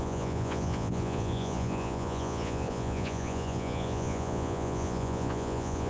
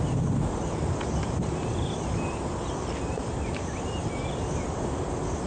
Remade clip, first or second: first